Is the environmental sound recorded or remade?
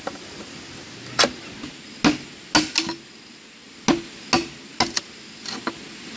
recorded